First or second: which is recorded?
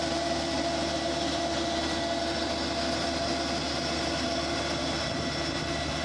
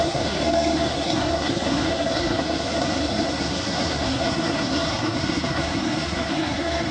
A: first